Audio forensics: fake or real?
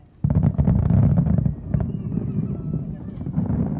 real